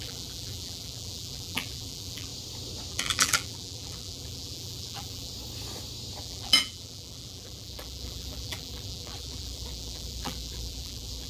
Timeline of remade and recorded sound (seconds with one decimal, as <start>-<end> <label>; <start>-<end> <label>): 0.0-2.3 remade; 2.3-2.9 recorded; 2.9-5.3 remade; 5.3-6.2 recorded; 6.2-11.3 remade